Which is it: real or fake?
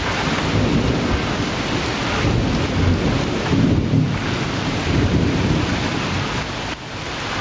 real